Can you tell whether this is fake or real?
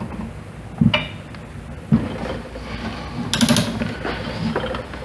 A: real